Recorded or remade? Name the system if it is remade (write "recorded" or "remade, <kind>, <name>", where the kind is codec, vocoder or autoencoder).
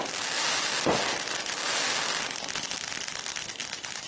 recorded